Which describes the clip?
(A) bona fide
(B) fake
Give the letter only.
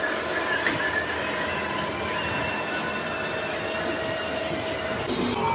A